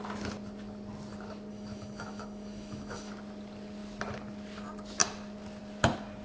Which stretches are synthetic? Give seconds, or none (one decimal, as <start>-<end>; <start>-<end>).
1.5-3.1